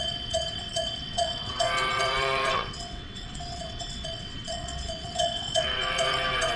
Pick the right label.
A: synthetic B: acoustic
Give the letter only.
A